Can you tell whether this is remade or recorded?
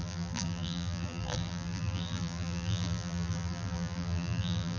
remade